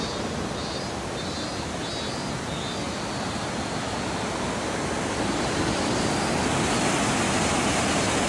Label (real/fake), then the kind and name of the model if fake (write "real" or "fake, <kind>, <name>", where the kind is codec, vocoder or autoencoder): real